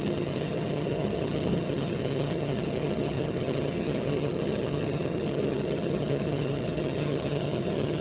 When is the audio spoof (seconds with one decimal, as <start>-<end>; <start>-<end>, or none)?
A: 0.0-8.0